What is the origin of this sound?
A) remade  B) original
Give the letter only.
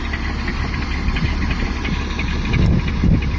B